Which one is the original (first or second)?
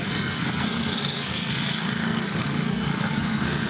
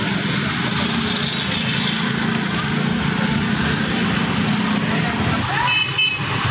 second